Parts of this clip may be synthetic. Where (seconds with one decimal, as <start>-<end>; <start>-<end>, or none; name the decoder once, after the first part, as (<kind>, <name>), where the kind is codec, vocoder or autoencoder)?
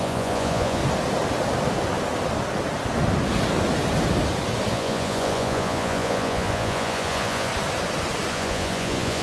0.0-0.8 (vocoder, Vocos); 4.7-7.5; 8.3-9.2